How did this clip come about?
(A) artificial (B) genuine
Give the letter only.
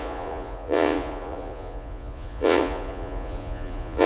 A